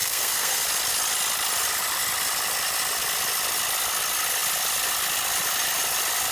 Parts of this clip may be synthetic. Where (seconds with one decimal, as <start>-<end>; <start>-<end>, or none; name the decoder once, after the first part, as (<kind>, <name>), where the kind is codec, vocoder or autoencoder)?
0.0-0.6 (codec, SNAC)